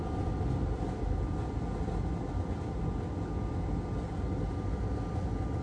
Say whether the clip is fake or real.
real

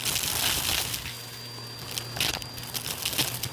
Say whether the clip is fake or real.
real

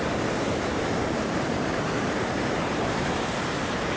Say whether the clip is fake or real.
fake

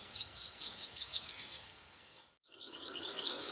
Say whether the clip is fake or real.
fake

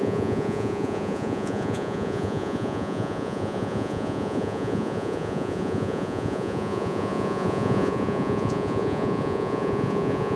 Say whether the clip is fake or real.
fake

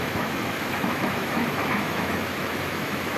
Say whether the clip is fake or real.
fake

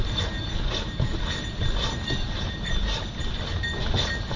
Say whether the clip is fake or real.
real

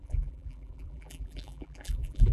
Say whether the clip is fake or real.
fake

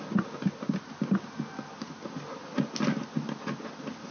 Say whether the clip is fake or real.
real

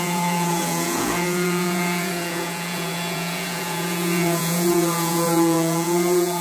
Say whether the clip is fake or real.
fake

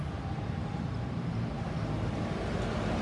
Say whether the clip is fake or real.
fake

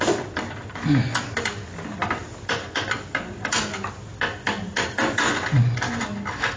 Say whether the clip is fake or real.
real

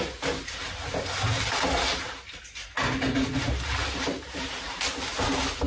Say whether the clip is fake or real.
real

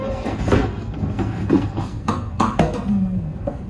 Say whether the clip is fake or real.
fake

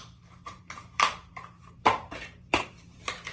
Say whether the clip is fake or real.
fake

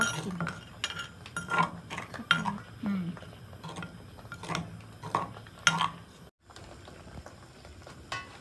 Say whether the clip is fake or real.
real